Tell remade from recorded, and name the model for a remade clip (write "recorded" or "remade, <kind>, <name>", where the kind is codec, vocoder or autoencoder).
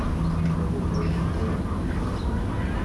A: recorded